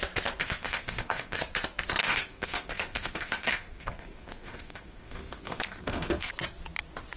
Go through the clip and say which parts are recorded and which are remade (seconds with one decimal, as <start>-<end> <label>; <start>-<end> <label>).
0.0-0.4 recorded; 0.4-1.4 remade; 1.4-2.0 recorded; 2.0-6.3 remade; 6.3-7.2 recorded